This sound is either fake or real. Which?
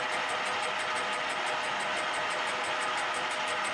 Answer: real